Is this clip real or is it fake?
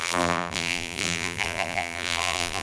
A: fake